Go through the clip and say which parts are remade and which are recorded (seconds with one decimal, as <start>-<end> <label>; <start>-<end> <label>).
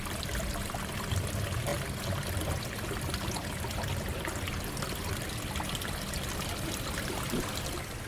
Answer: 0.0-8.1 recorded